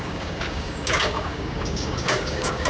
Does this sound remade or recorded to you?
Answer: remade